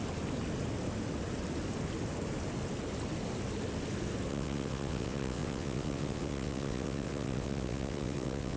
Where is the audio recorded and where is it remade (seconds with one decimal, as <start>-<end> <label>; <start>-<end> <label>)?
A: 0.0-4.3 recorded; 4.3-8.6 remade